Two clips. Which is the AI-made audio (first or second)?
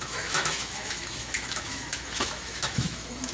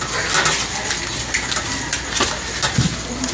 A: first